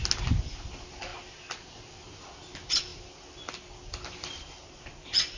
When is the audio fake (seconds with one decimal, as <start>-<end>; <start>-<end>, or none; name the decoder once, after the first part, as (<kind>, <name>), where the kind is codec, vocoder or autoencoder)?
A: none